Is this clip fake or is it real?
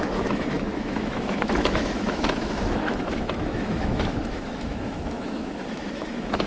fake